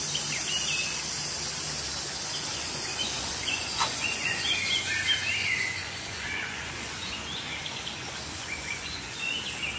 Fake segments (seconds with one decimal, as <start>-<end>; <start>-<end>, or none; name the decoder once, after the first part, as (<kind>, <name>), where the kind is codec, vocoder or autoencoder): 2.5-4.9 (vocoder, Vocos); 5.4-9.4